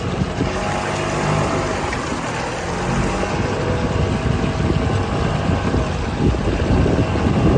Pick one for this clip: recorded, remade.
recorded